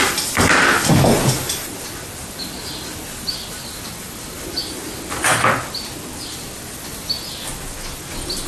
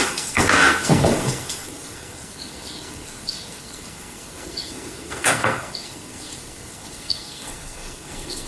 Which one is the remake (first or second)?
second